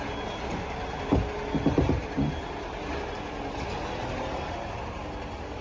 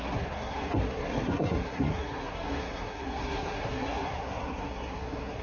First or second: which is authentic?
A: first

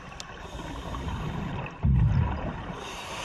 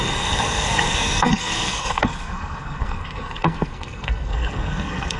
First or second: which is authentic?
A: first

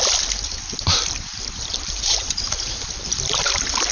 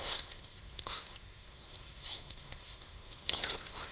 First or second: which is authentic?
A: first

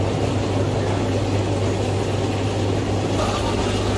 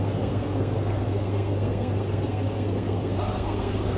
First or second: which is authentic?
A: first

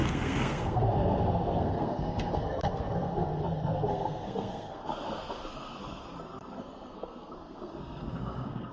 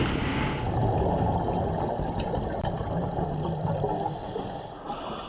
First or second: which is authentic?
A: second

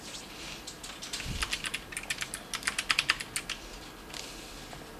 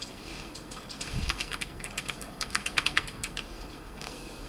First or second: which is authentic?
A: first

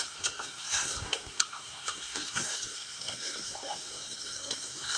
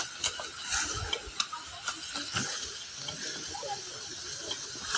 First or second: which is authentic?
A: second